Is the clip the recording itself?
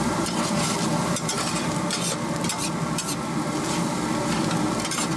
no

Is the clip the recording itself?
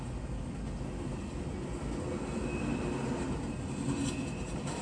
yes